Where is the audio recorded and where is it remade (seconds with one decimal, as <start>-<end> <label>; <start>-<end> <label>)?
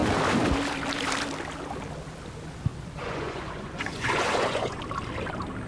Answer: 0.0-2.7 recorded; 2.7-4.8 remade; 4.8-5.7 recorded